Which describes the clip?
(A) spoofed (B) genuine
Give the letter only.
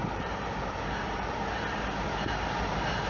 A